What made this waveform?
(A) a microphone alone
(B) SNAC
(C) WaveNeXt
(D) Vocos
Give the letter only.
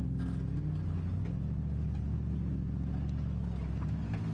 A